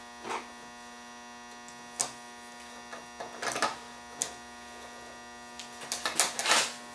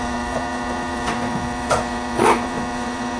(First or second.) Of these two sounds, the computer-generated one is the second